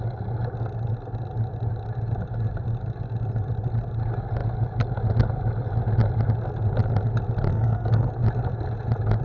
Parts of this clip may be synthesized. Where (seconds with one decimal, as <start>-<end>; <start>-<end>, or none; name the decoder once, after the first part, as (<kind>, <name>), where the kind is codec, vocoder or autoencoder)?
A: 7.5-8.1 (codec, SNAC)